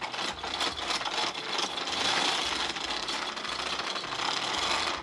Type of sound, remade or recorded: recorded